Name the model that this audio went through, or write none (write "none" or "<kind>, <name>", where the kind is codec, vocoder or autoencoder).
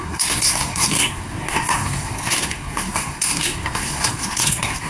codec, SNAC